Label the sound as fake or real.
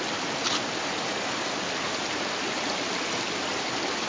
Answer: real